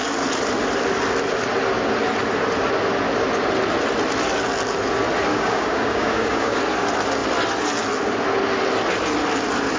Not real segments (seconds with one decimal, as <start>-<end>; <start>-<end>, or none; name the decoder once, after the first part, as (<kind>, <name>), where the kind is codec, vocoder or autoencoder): 5.3-6.6 (codec, DAC)